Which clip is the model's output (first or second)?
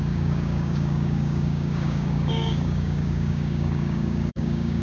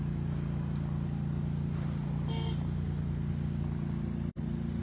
first